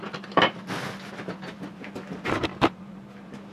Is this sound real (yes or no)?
yes